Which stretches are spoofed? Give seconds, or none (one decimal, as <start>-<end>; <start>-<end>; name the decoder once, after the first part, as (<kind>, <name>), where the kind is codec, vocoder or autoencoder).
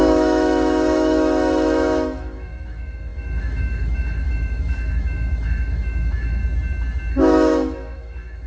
0.0-6.4 (autoencoder, DAC-VAE); 7.1-8.5